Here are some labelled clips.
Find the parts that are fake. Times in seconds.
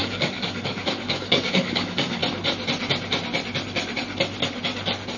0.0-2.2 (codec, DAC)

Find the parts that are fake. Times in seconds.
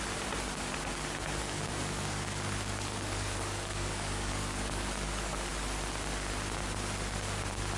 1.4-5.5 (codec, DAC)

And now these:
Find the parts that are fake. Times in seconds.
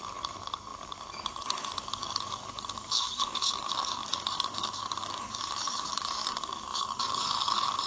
0.0-7.9 (codec, DAC)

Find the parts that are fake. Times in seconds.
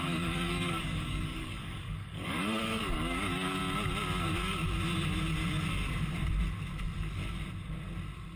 0.0-3.6 (codec, DAC)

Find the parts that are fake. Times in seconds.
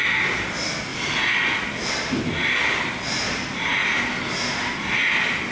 none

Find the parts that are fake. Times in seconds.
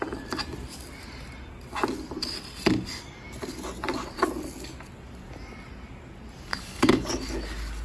6.5-7.1 (codec, DAC)